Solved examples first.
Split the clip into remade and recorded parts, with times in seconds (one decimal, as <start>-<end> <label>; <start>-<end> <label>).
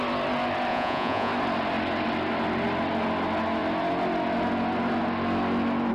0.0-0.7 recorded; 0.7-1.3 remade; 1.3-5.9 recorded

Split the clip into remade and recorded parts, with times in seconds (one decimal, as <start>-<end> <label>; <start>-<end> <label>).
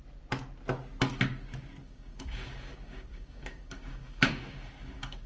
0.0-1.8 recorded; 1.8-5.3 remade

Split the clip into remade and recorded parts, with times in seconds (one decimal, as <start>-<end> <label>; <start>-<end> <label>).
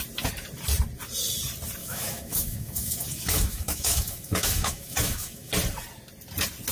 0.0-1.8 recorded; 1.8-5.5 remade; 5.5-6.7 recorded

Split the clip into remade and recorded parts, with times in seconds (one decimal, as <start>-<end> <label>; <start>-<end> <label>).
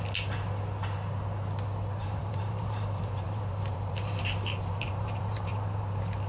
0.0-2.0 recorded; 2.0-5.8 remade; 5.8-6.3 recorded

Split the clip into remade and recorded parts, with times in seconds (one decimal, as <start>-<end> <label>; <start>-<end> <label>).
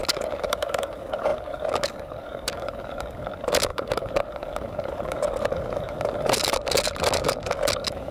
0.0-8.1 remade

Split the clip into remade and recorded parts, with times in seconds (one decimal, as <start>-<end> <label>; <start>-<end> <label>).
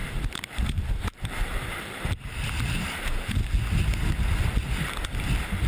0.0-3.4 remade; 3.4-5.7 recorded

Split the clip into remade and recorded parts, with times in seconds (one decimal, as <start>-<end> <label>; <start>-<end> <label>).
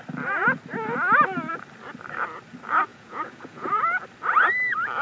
0.0-2.9 recorded; 2.9-3.8 remade; 3.8-5.0 recorded